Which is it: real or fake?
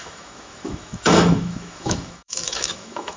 fake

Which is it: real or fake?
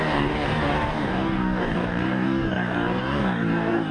fake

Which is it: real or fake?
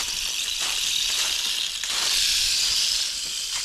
real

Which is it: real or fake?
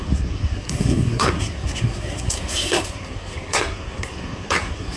fake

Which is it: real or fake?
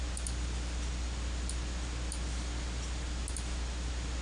real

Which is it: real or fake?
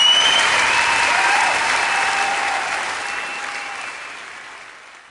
fake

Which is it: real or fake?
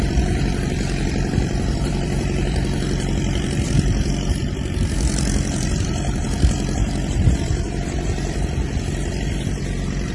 fake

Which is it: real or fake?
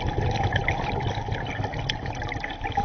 real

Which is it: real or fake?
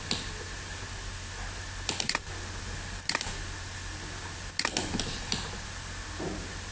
real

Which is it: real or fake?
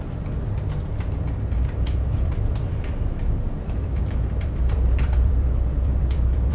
fake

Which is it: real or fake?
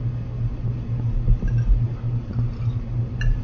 real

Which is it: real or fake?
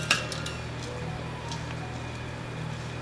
real